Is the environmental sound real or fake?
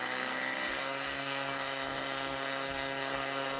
fake